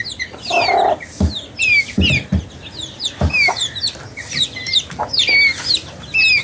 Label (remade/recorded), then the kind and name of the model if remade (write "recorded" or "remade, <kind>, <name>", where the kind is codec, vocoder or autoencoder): recorded